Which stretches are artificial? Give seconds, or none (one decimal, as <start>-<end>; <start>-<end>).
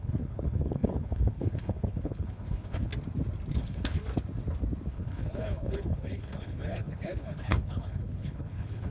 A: 0.0-2.9; 3.5-4.0; 4.9-8.9